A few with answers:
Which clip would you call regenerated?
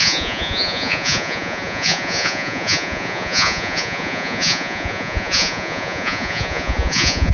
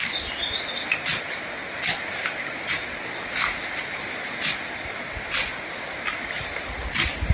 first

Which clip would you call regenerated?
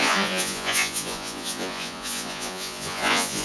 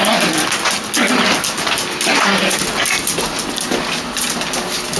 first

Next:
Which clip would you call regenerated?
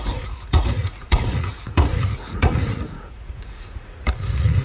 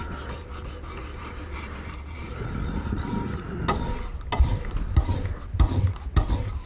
first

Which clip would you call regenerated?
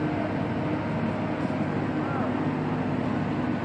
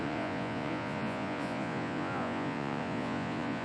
second